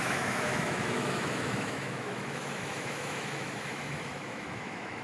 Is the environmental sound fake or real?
fake